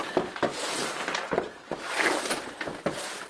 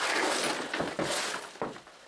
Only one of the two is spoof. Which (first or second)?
first